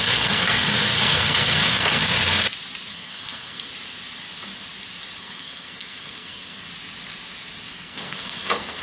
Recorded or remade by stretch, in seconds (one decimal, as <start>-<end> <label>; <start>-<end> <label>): 0.0-2.0 remade; 2.0-2.9 recorded; 2.9-3.7 remade; 3.7-5.2 recorded; 5.2-6.7 remade; 6.7-7.7 recorded; 7.7-8.8 remade